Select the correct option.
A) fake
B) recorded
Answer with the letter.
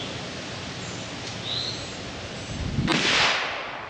B